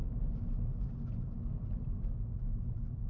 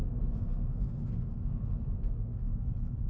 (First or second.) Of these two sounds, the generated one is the second